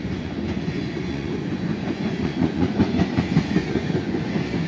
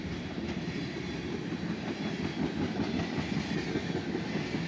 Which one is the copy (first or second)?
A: first